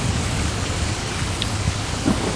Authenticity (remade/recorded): remade